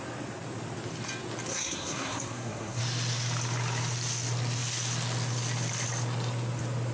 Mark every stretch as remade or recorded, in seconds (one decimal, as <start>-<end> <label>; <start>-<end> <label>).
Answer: 0.0-1.5 recorded; 1.5-2.8 remade; 2.8-6.9 recorded